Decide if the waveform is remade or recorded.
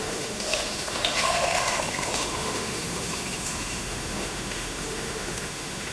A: remade